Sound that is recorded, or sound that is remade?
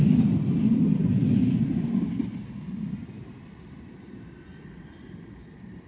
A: remade